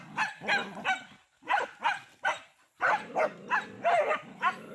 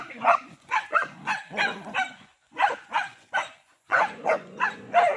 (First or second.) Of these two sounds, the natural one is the first